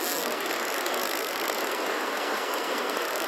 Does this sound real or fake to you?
fake